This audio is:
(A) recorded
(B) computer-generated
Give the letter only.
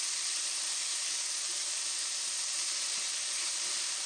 B